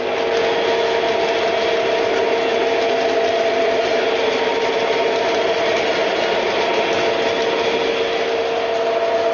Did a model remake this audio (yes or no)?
no